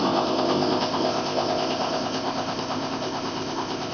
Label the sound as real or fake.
fake